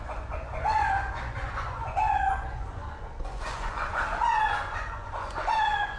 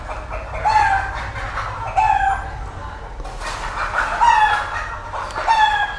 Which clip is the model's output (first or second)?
first